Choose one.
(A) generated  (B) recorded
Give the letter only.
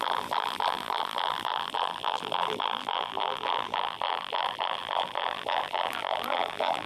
A